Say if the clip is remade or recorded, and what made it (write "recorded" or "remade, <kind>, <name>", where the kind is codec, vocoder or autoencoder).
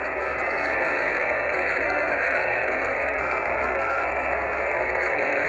remade, codec, SNAC